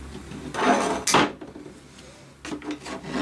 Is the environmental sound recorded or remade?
recorded